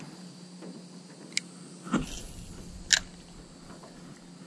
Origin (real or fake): real